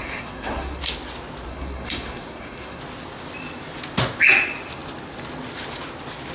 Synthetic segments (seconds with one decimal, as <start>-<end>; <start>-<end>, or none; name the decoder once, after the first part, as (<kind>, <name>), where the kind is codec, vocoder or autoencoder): 0.0-0.8 (codec, SNAC); 1.5-2.8